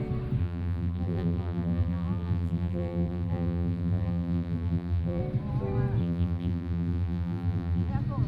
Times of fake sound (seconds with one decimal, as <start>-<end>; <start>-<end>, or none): 0.4-5.2; 6.0-7.9